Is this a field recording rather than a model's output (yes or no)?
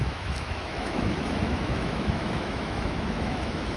no